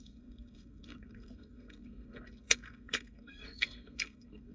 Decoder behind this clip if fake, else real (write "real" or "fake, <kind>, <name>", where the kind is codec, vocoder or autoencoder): fake, codec, SNAC